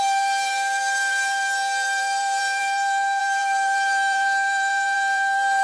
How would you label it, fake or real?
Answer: fake